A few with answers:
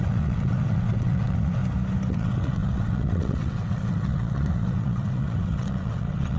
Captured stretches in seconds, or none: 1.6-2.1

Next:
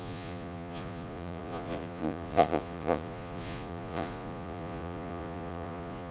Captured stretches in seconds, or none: none

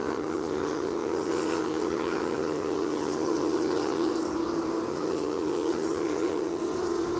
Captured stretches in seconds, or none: 4.1-4.9; 6.6-7.2

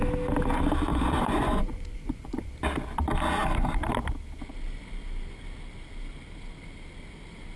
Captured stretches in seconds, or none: 0.0-0.9; 2.5-7.6

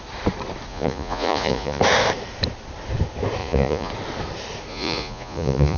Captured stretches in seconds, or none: 0.0-0.7; 1.8-3.4; 3.9-4.7

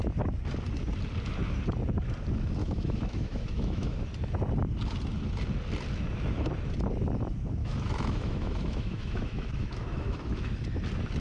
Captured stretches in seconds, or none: 0.0-2.6; 4.0-7.6; 10.5-11.2

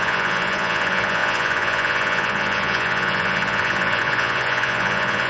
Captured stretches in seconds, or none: none